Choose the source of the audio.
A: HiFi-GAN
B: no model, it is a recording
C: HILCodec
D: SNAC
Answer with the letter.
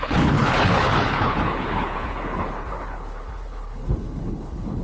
C